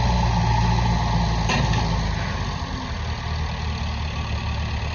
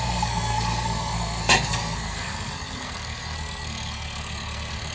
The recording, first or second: first